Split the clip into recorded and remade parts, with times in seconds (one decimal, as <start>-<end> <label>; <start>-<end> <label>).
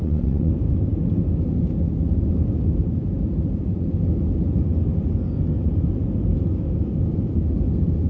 0.0-0.5 remade; 0.5-8.1 recorded